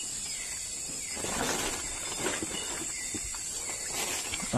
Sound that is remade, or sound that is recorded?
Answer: recorded